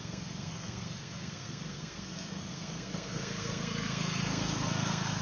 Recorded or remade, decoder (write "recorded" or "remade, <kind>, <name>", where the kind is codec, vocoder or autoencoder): remade, codec, SNAC